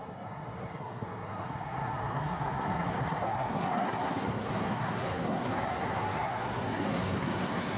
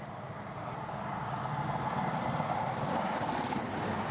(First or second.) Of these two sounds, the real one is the second